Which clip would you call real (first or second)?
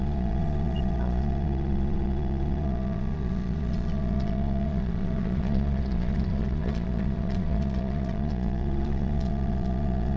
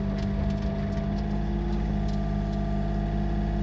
second